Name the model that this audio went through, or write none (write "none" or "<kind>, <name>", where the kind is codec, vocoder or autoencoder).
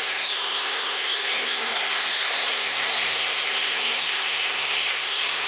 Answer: codec, SNAC